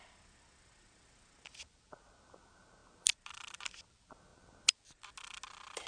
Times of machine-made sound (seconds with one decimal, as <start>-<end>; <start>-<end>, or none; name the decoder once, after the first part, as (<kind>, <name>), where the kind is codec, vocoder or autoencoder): none